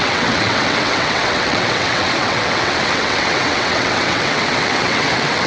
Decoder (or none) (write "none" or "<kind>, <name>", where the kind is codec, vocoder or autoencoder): vocoder, WaveNeXt